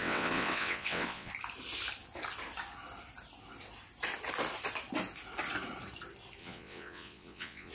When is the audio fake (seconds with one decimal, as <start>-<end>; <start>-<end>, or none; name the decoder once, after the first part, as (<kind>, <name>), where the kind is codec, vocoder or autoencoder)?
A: 0.0-1.3 (vocoder, WaveNeXt); 6.4-7.7